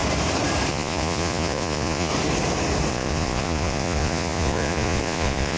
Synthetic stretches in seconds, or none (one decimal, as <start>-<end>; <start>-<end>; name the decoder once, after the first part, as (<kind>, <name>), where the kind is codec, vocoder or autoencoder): 0.7-2.1 (vocoder, Vocos); 2.9-5.6